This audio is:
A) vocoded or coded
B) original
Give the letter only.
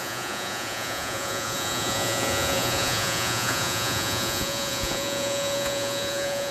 A